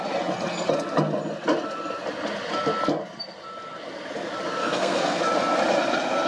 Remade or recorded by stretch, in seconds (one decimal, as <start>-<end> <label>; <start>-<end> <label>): 0.0-4.6 recorded; 4.6-5.2 remade; 5.2-6.3 recorded